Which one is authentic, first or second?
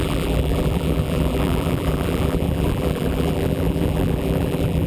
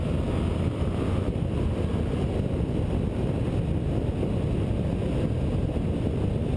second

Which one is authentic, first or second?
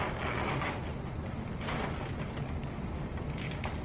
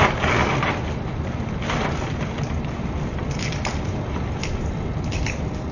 first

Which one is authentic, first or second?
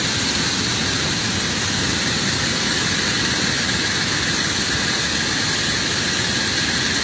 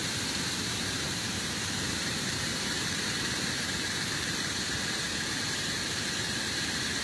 first